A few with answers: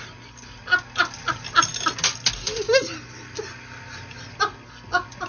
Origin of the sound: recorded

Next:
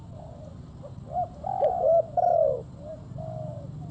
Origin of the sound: recorded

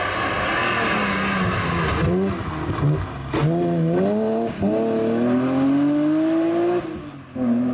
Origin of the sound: recorded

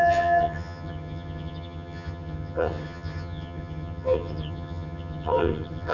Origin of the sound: remade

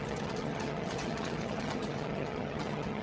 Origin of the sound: remade